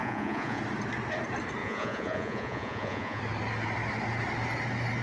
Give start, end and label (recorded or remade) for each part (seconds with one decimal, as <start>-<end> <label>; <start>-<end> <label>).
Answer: 0.0-0.6 remade; 0.6-1.6 recorded; 1.6-3.2 remade; 3.2-5.0 recorded